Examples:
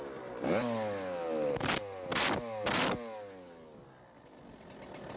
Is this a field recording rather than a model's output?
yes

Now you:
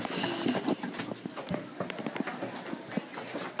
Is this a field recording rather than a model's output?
yes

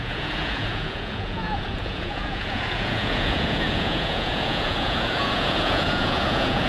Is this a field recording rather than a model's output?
no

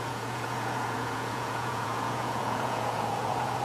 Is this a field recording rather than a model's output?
no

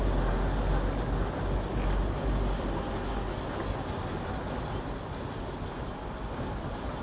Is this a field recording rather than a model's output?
yes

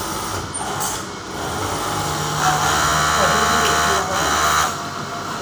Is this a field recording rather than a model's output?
yes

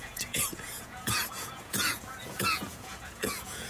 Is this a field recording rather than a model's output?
no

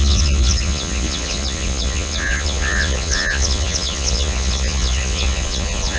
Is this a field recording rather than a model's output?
no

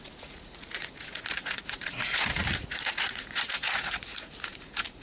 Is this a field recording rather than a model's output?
no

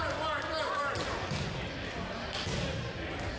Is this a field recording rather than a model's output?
yes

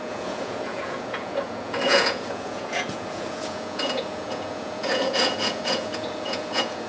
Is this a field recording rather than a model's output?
no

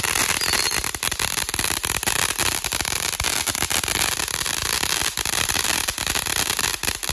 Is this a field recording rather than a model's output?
yes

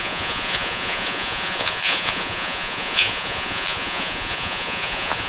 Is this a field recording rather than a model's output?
no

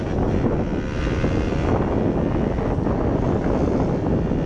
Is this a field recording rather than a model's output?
yes